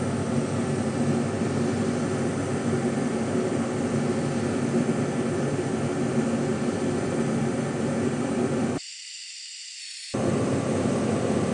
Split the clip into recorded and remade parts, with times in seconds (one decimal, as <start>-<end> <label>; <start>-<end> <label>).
0.0-11.5 recorded